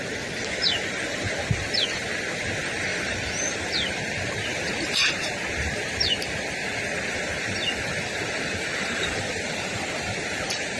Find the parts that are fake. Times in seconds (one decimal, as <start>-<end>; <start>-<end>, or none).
2.9-3.5; 4.5-5.2; 7.2-10.8